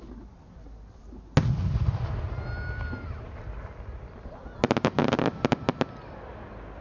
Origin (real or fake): real